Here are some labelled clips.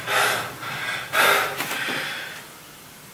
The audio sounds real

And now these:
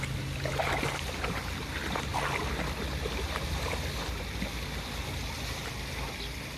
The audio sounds real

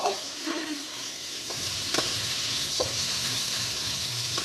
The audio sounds fake